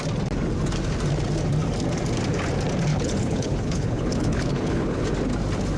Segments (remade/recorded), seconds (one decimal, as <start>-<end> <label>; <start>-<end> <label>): 0.0-2.9 recorded; 2.9-5.0 remade; 5.0-5.8 recorded